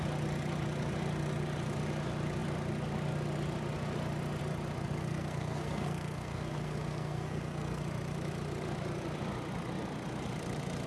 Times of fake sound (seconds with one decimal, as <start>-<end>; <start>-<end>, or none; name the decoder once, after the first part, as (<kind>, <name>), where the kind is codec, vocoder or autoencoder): 5.0-7.8 (codec, SNAC)